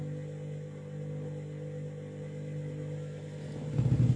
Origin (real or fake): real